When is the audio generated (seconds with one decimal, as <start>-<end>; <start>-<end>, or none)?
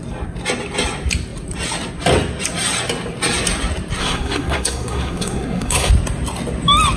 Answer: 4.0-5.9